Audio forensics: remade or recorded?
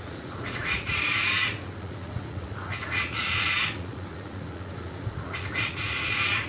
remade